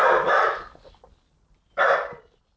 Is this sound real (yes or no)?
no